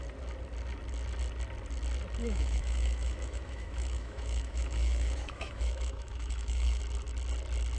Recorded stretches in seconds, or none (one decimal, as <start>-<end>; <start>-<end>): 0.0-2.2; 6.8-7.8